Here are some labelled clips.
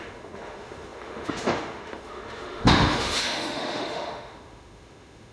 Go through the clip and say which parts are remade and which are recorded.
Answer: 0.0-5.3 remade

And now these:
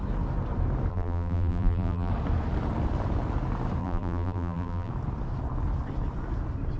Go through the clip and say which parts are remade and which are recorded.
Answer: 0.0-0.9 recorded; 0.9-2.1 remade; 2.1-3.8 recorded; 3.8-4.9 remade; 4.9-6.8 recorded

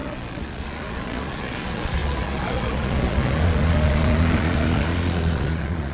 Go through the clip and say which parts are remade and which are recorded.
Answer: 0.0-5.9 remade

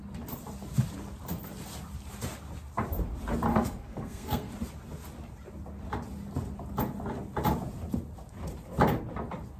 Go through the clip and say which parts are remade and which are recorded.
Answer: 0.0-3.5 recorded; 3.5-4.5 remade; 4.5-9.6 recorded

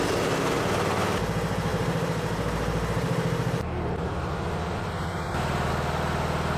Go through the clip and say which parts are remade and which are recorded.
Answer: 0.0-1.7 recorded; 1.7-5.7 remade; 5.7-6.6 recorded

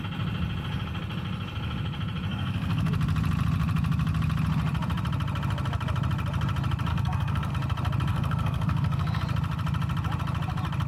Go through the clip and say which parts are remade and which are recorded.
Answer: 0.0-2.3 recorded; 2.3-2.9 remade; 2.9-6.9 recorded; 6.9-7.5 remade; 7.5-8.1 recorded; 8.1-9.2 remade; 9.2-10.9 recorded